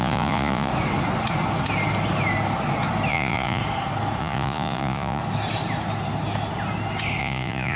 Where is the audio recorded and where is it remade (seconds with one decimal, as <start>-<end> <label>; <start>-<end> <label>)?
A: 0.0-0.7 remade; 0.7-3.1 recorded; 3.1-3.6 remade; 3.6-4.2 recorded; 4.2-5.2 remade; 5.2-7.2 recorded; 7.2-7.8 remade